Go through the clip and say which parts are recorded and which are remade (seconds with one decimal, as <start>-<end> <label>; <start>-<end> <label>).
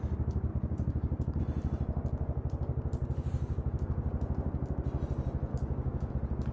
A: 0.0-0.5 recorded; 0.5-1.4 remade; 1.4-3.0 recorded; 3.0-3.7 remade; 3.7-5.5 recorded; 5.5-6.1 remade; 6.1-6.5 recorded